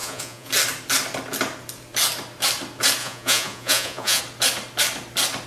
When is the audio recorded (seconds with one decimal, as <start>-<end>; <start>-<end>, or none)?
0.5-3.0; 4.2-5.5